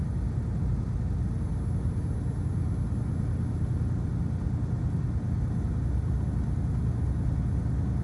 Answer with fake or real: real